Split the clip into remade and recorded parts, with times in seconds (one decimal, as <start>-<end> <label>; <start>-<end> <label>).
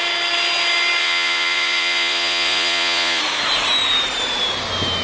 0.0-1.0 recorded; 1.0-3.2 remade; 3.2-5.0 recorded